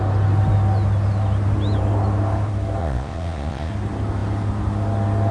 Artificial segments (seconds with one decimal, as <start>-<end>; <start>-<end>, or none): 2.8-3.7